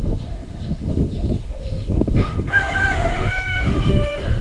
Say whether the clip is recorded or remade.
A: remade